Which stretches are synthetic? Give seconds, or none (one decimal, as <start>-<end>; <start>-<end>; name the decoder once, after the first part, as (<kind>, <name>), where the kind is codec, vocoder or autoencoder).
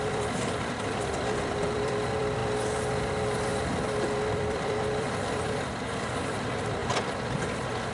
0.0-2.4 (vocoder, BigVGAN v2); 3.0-3.5; 4.3-6.8